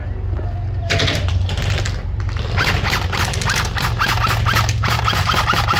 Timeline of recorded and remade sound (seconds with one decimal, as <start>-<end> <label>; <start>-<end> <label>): 0.0-0.8 recorded; 0.8-2.7 remade; 2.7-4.8 recorded; 4.8-5.8 remade